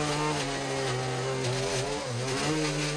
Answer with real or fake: real